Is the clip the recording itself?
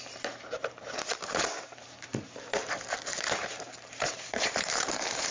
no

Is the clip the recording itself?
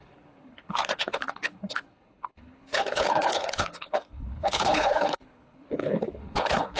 no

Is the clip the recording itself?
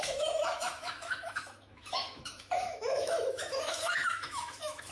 no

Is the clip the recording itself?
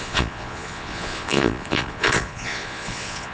no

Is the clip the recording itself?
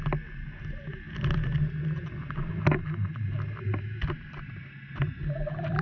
yes